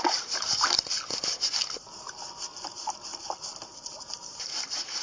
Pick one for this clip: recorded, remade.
recorded